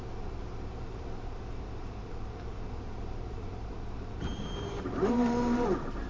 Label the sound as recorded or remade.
remade